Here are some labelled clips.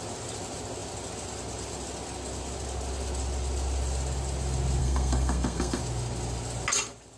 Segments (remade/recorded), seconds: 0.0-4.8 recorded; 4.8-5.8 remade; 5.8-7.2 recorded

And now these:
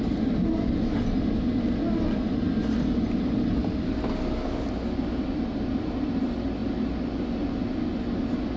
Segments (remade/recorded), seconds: 0.0-8.6 recorded